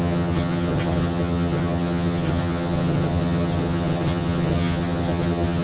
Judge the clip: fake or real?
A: fake